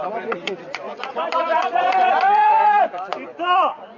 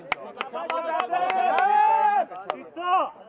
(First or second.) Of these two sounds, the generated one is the first